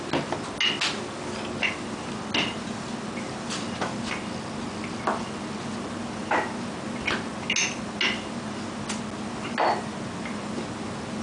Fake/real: real